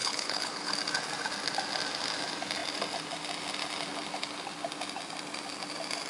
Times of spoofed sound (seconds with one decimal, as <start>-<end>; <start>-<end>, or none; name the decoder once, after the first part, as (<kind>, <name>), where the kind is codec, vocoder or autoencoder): 0.0-0.7 (codec, HILCodec)